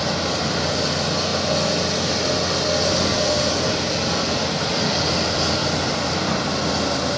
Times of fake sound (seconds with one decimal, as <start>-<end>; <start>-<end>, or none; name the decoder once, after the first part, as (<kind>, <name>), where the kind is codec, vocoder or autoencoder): none